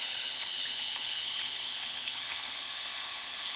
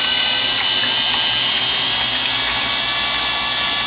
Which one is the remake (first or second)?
first